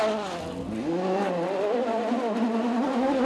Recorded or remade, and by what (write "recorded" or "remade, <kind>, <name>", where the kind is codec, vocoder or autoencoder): recorded